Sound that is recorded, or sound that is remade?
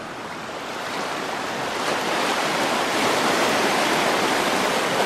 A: recorded